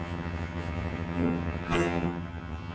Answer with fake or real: fake